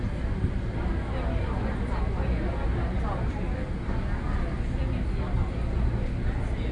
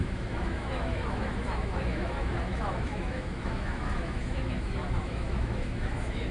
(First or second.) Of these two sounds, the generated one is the second